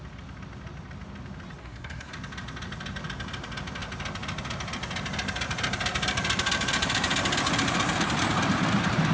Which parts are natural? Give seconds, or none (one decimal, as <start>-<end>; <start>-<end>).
0.0-1.6; 2.1-9.1